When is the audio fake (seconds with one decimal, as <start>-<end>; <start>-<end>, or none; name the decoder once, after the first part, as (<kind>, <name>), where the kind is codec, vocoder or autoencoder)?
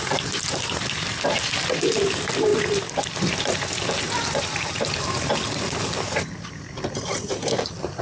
none